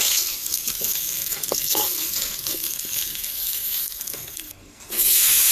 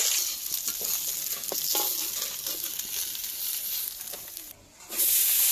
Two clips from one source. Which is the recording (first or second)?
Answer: second